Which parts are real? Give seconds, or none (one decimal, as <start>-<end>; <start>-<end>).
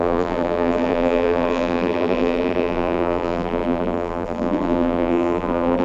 none